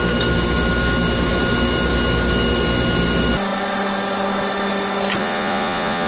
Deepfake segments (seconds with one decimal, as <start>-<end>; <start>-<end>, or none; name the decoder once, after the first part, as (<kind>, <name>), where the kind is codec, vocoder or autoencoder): 5.2-6.1 (vocoder, Vocos)